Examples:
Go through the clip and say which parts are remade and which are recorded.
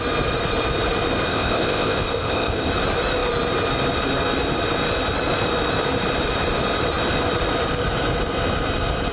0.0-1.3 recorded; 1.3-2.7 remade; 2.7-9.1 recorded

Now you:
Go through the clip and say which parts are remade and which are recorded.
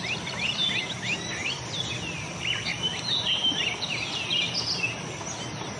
0.0-5.8 recorded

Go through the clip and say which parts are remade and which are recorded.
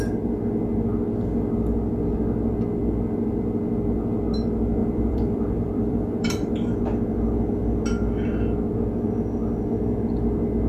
0.0-4.8 recorded; 4.8-6.8 remade; 6.8-10.7 recorded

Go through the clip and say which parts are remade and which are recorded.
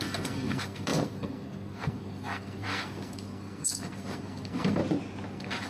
0.0-4.8 remade; 4.8-5.3 recorded; 5.3-5.7 remade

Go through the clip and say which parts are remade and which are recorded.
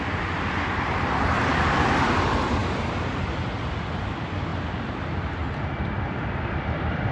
0.0-2.6 remade; 2.6-3.2 recorded; 3.2-4.5 remade; 4.5-5.6 recorded; 5.6-7.1 remade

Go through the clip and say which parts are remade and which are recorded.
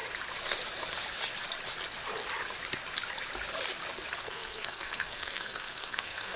0.0-4.2 recorded; 4.2-6.4 remade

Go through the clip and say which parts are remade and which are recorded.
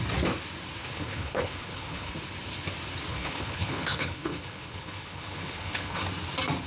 0.0-0.8 recorded; 0.8-2.1 remade; 2.1-3.1 recorded; 3.1-6.0 remade; 6.0-6.7 recorded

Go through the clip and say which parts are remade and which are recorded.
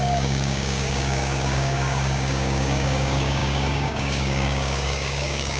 0.0-5.6 remade